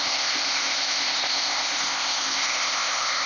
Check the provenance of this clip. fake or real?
fake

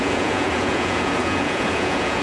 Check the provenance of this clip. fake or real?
fake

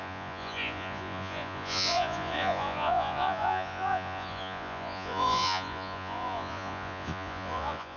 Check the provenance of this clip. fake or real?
fake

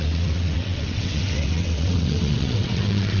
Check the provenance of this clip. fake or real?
fake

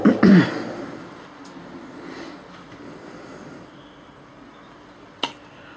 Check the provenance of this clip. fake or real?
real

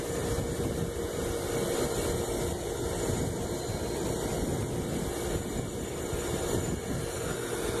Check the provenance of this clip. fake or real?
real